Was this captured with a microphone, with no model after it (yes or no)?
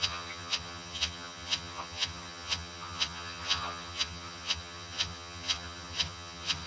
no